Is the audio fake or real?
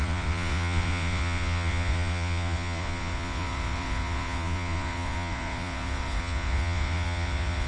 fake